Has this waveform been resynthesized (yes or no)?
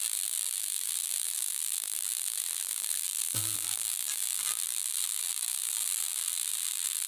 yes